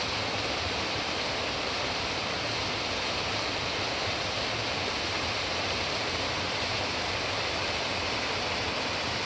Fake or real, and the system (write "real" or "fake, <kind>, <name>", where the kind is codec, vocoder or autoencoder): real